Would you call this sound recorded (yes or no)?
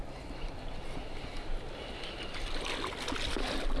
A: yes